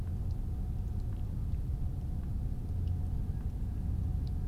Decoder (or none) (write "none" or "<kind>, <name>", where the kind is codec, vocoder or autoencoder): none